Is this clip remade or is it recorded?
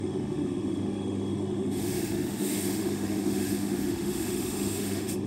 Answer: remade